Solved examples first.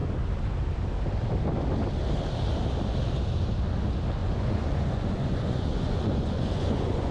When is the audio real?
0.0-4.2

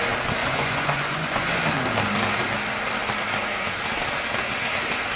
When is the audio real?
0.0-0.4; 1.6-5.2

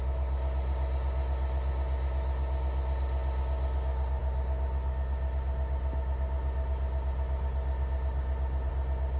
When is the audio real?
0.0-9.2

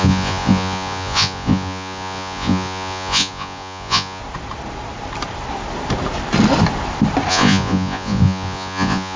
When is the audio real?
4.2-7.3

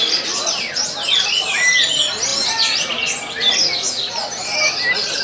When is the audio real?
0.0-5.2